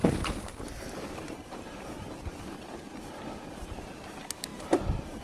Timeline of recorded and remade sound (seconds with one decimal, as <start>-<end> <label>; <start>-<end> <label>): 0.0-1.1 recorded; 1.1-5.2 remade